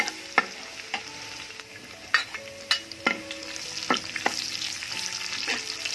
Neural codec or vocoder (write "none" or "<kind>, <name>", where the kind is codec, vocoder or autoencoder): none